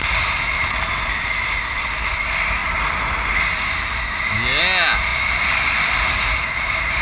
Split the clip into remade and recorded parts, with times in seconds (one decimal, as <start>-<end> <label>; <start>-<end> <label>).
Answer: 0.0-7.0 recorded